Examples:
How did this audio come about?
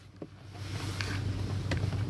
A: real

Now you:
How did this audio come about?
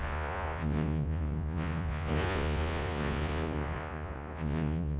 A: fake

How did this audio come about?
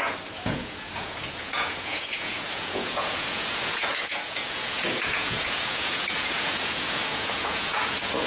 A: fake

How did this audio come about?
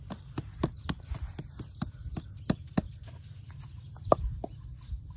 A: real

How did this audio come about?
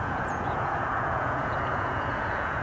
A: fake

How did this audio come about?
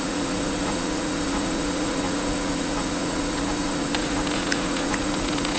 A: fake